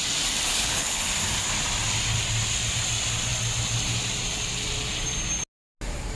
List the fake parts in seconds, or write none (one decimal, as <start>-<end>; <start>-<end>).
0.5-1.0